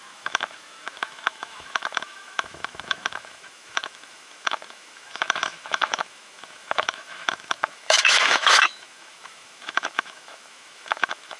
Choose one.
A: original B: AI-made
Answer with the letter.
B